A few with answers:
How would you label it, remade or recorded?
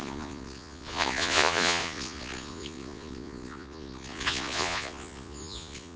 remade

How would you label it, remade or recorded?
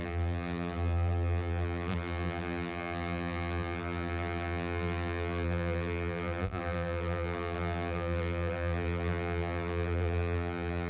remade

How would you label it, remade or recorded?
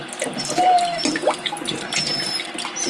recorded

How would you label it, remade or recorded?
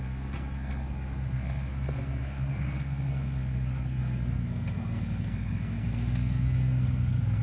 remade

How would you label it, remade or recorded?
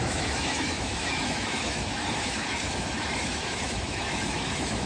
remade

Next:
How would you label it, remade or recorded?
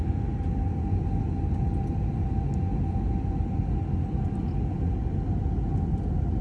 recorded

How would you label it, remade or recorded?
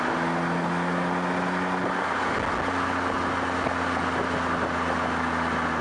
recorded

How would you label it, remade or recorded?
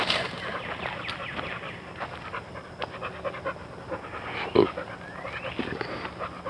recorded